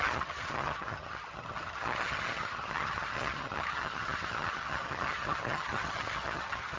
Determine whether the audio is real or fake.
fake